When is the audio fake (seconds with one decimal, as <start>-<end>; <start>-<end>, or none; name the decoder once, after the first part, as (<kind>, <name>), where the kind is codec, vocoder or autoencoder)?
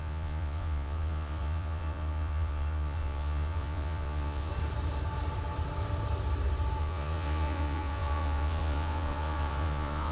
0.0-4.5 (vocoder, Vocos); 6.8-10.1